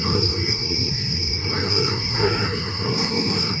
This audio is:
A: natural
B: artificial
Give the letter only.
B